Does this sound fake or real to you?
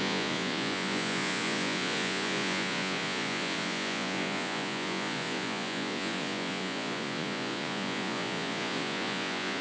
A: fake